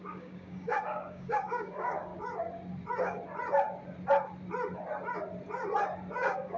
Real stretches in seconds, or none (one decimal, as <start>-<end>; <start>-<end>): 2.1-6.1